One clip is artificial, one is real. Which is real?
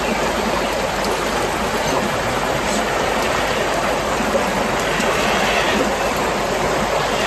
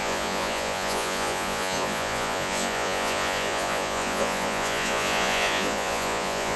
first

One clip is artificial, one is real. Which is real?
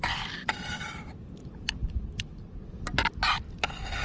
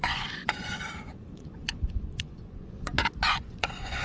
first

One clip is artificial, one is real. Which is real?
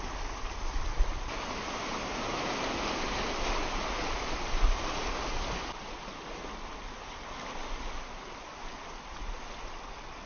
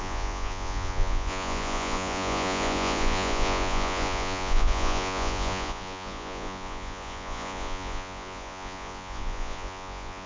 first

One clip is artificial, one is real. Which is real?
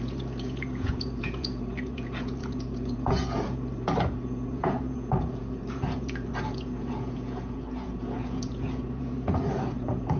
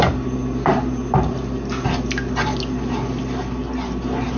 second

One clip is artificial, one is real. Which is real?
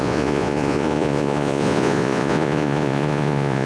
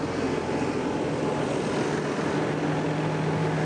second